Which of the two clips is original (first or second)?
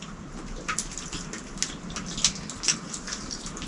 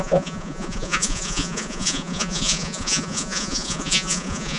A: first